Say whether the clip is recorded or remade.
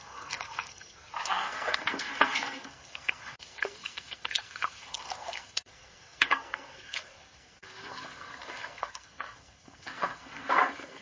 remade